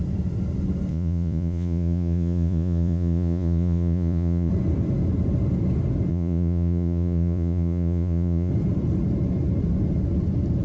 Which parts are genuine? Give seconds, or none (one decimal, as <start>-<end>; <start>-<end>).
0.0-0.9; 4.5-6.1; 8.5-10.6